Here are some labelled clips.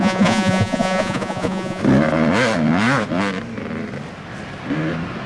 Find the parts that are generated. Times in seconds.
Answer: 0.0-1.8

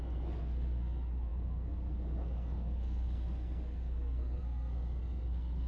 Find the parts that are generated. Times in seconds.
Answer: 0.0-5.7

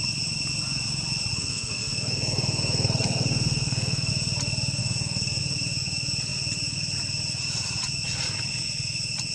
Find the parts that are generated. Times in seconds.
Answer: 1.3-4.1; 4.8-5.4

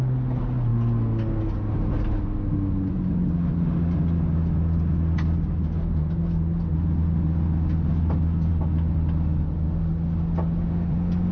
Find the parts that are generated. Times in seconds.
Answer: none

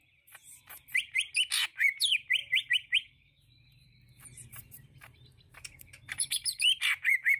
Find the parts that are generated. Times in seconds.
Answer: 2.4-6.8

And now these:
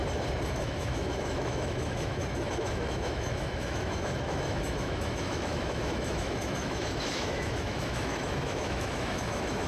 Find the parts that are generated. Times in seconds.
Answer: 0.5-9.7

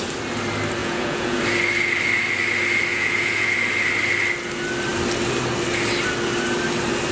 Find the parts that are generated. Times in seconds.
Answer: 0.8-1.4; 2.9-3.5